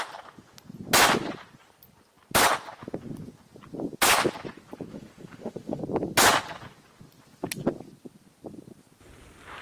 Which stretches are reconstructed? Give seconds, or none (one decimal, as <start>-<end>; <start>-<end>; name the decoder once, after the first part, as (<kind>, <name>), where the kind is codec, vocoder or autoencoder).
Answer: 4.9-5.8 (autoencoder, DAC-VAE)